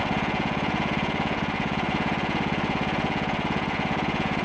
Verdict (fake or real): fake